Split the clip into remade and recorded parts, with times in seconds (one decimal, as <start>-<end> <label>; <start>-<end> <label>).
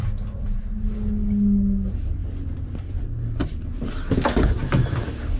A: 0.0-0.6 remade; 0.6-5.4 recorded